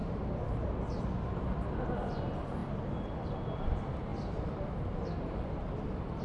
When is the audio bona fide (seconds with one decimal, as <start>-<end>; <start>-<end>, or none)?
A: 0.0-6.2